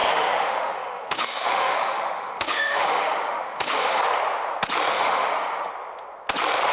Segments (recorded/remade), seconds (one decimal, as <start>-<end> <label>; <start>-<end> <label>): 0.0-4.0 remade; 4.0-4.9 recorded; 4.9-5.7 remade; 5.7-6.7 recorded